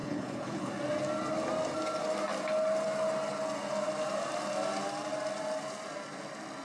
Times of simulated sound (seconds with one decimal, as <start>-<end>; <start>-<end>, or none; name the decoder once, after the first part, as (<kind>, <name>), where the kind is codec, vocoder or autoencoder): 0.0-0.7 (codec, HILCodec)